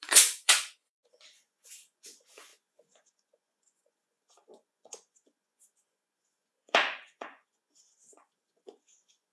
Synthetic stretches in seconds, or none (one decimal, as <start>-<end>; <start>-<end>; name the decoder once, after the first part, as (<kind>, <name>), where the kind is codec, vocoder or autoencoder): 0.0-9.3 (vocoder, Vocos)